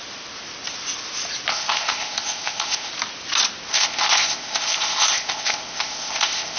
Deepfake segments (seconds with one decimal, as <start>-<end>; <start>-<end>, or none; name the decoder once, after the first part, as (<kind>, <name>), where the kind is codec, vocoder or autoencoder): 1.5-2.9 (codec, ZipCodec); 3.7-6.6